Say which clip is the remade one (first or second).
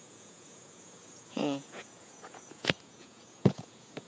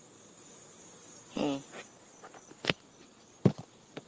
first